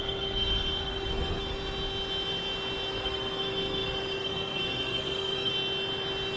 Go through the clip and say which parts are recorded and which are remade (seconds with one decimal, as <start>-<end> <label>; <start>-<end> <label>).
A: 0.0-1.4 remade; 1.4-2.9 recorded; 2.9-5.5 remade; 5.5-6.4 recorded